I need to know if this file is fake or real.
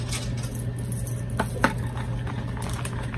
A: real